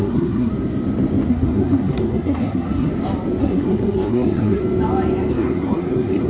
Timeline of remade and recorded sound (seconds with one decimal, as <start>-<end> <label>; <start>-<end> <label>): 0.0-0.5 remade; 0.5-1.3 recorded; 1.3-2.9 remade; 2.9-3.4 recorded; 3.4-4.6 remade; 4.6-5.3 recorded; 5.3-6.3 remade